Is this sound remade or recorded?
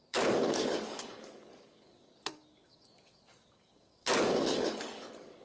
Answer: remade